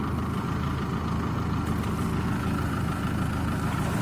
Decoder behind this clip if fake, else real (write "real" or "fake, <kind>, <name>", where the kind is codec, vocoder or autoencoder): real